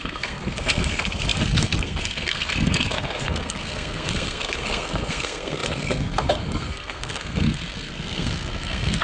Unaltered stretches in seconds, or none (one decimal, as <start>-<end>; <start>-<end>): none